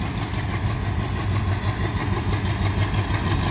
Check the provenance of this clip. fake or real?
real